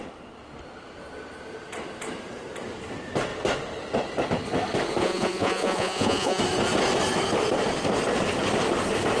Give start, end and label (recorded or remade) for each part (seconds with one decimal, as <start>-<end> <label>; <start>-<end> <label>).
0.0-5.0 recorded; 5.0-6.4 remade; 6.4-9.2 recorded